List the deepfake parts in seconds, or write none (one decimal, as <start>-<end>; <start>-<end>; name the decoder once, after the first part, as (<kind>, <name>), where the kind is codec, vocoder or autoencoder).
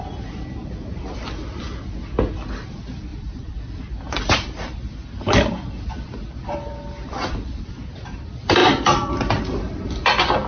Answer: 3.1-7.6 (vocoder, BigVGAN v2); 8.6-9.1